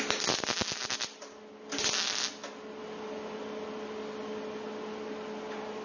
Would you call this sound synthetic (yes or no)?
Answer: no